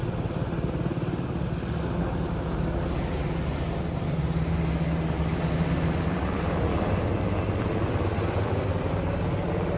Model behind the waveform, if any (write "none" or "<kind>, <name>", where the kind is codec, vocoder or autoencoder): none